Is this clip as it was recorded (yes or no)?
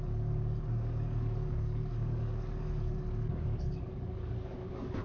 no